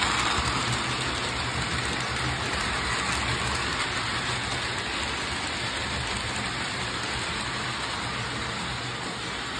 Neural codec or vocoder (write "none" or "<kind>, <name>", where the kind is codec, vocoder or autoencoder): none